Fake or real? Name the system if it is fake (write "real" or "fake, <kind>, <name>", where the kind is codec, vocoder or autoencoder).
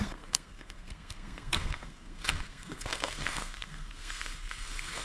fake, codec, SNAC